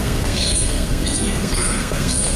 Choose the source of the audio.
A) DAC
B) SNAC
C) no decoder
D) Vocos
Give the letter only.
B